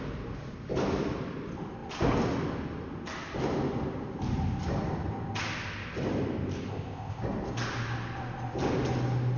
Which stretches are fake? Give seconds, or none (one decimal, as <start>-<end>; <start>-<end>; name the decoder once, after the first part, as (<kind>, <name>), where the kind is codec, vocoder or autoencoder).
6.7-7.2 (codec, ZipCodec)